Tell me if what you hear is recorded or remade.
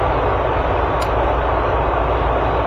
recorded